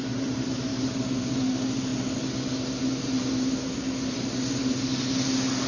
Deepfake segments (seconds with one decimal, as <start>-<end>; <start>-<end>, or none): 0.0-0.7; 1.2-1.9; 2.9-4.6